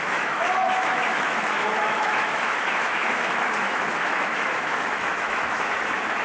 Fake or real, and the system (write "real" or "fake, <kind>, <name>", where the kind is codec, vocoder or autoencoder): fake, autoencoder, DAC-VAE